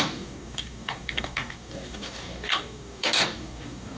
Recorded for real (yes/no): no